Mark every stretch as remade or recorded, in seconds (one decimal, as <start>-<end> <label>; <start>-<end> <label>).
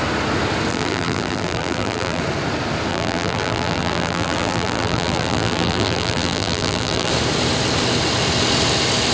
0.0-0.7 recorded; 0.7-2.2 remade; 2.2-2.9 recorded; 2.9-7.1 remade; 7.1-9.1 recorded